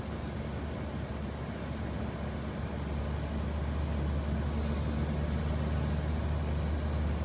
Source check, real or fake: real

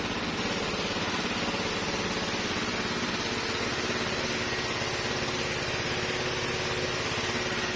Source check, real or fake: real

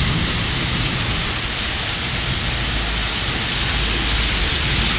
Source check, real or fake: real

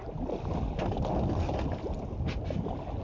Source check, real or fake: real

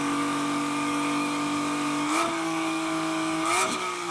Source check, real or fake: fake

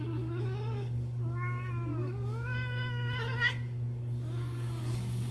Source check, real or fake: fake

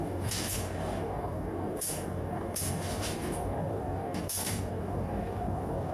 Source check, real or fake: fake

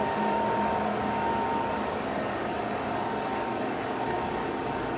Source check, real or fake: fake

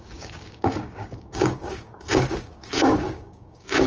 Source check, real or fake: fake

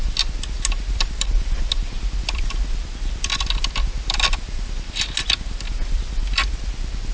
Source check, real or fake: real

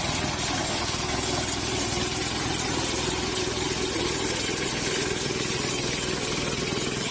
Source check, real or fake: real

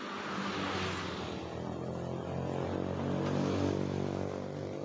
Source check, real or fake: real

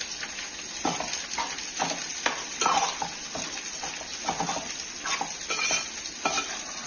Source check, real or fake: real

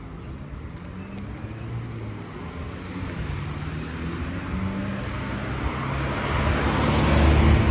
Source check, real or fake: real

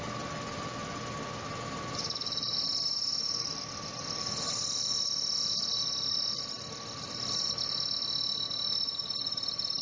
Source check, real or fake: real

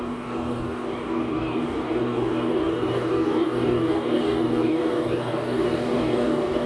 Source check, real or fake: fake